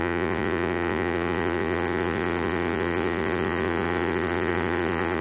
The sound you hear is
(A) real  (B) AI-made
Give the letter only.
B